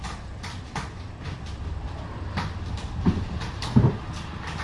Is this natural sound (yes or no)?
no